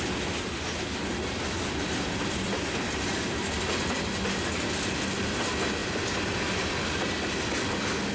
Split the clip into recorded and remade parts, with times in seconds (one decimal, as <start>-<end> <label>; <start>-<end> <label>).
0.0-8.1 recorded